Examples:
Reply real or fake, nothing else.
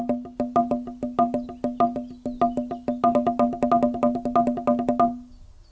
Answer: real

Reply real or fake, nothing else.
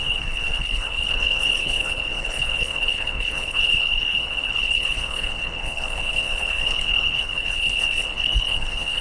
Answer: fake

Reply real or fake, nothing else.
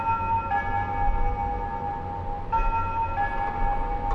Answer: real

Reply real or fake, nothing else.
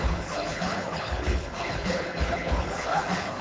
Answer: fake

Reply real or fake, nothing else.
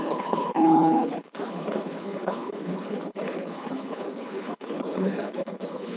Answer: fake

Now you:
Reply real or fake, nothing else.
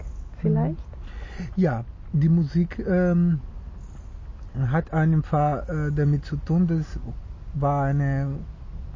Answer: real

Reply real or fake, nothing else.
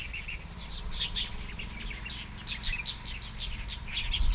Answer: real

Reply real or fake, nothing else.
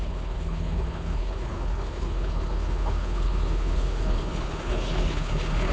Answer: fake